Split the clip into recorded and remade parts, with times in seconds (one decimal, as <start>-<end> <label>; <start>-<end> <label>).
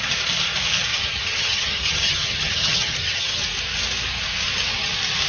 0.0-0.9 recorded; 0.9-3.4 remade; 3.4-5.3 recorded